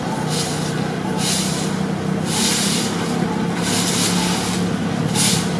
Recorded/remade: recorded